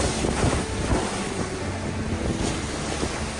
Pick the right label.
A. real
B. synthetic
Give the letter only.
A